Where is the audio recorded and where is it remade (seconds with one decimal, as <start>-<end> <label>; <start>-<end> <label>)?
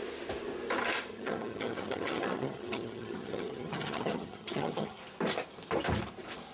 0.0-1.1 recorded; 1.1-5.0 remade; 5.0-6.5 recorded